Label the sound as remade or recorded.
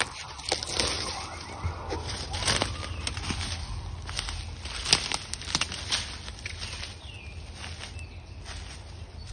recorded